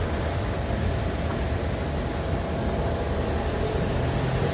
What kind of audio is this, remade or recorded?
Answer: recorded